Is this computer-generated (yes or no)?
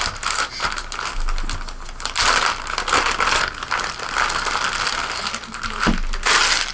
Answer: no